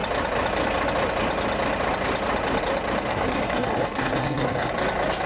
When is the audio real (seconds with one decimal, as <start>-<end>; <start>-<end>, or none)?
0.0-3.1; 4.7-5.3